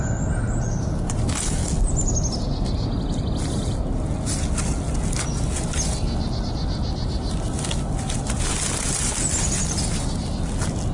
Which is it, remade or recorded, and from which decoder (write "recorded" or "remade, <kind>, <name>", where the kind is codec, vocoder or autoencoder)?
recorded